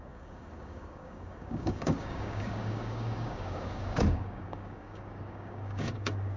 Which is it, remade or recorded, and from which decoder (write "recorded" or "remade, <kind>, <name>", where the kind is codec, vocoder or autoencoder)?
remade, codec, DAC